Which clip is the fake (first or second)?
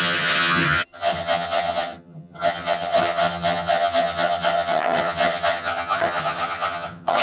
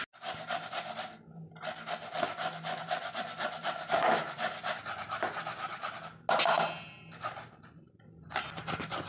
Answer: first